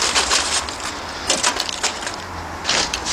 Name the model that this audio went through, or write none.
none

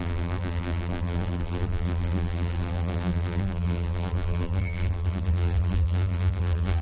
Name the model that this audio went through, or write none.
vocoder, BigVGAN v2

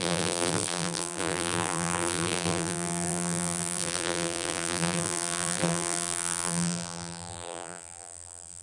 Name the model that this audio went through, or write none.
vocoder, BigVGAN v2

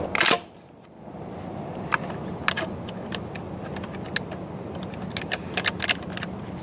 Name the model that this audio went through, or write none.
none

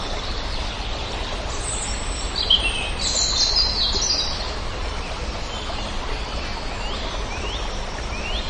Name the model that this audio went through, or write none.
none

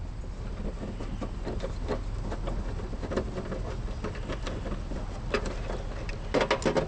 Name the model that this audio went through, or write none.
none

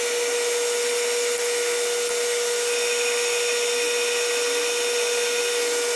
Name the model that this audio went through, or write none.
none